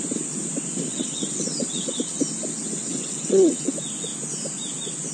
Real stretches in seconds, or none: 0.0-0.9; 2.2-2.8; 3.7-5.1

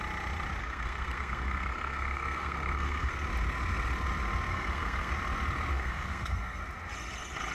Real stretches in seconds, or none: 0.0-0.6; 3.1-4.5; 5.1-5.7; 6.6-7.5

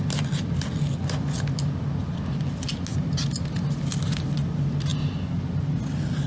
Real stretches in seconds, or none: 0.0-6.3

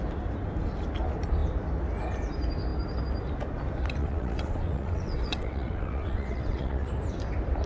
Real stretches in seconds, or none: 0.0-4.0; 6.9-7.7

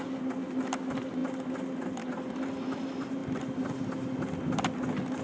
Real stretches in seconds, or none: 0.0-5.2

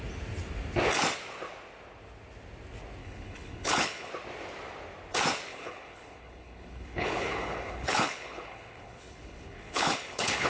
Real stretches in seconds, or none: 0.0-3.0; 4.1-5.5